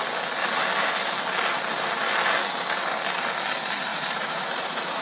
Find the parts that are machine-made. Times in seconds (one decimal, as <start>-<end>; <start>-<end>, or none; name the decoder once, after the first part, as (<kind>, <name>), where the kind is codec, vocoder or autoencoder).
3.9-5.0 (vocoder, Vocos)